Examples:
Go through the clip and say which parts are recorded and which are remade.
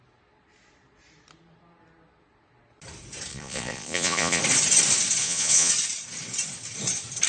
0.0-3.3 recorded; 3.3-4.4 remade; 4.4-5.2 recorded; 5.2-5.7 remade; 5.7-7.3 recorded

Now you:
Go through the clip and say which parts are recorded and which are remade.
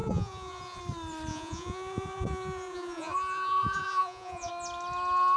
0.0-0.8 remade; 0.8-1.3 recorded; 1.3-4.5 remade; 4.5-5.4 recorded